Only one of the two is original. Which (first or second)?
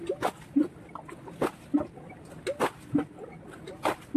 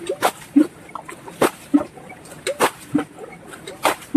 first